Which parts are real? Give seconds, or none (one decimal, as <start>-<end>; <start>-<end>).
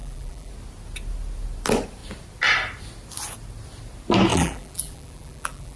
0.5-4.3